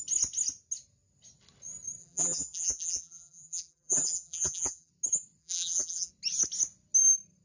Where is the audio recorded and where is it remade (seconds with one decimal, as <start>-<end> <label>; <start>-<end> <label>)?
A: 0.0-2.0 recorded; 2.0-4.9 remade; 4.9-5.4 recorded; 5.4-6.1 remade; 6.1-7.4 recorded